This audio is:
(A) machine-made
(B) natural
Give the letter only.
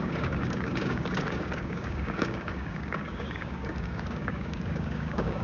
A